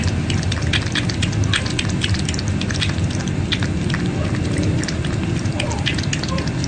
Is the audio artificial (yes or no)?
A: no